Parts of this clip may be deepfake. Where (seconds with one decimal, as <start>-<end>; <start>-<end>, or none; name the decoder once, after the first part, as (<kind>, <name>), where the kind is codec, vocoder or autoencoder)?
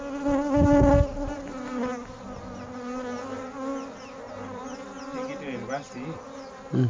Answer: none